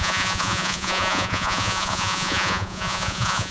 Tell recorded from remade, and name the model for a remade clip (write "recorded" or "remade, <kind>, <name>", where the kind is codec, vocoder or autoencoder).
remade, vocoder, Vocos